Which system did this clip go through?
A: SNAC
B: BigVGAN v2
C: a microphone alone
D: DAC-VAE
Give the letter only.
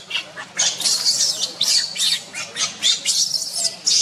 C